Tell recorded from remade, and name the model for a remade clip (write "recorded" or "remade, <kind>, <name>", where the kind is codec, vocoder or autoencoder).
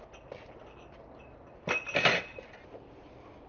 recorded